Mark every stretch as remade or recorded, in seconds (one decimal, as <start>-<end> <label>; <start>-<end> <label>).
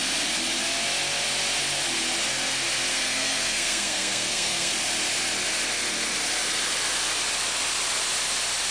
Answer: 0.0-2.9 recorded; 2.9-4.7 remade; 4.7-8.7 recorded